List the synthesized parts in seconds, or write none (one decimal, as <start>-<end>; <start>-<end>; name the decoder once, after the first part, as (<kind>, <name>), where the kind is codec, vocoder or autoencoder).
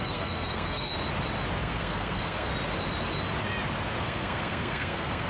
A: 0.0-0.9 (codec, SNAC); 1.6-2.5; 4.0-5.3